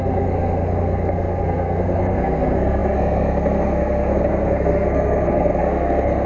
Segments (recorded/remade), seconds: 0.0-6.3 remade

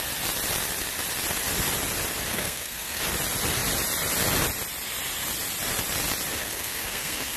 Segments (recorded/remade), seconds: 0.0-2.3 recorded; 2.3-3.0 remade; 3.0-6.4 recorded; 6.4-7.4 remade

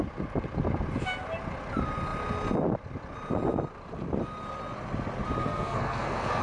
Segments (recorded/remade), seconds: 0.0-5.4 recorded; 5.4-6.4 remade

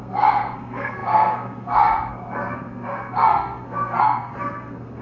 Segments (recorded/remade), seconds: 0.0-5.0 remade